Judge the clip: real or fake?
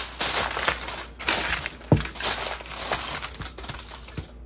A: real